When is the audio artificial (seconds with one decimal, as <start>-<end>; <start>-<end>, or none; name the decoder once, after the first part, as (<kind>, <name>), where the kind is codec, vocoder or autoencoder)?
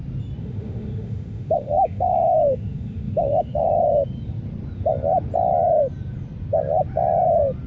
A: 0.4-3.6 (autoencoder, DAC-VAE)